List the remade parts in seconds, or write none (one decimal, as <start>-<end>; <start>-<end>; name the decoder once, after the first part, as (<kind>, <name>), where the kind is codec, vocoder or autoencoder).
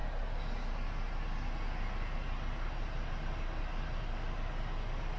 none